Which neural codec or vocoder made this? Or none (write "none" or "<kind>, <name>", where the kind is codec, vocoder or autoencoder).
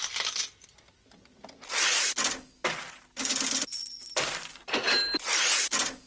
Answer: none